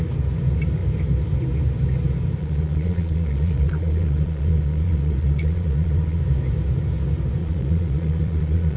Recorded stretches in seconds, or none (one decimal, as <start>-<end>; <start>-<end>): 0.0-2.4; 6.2-7.4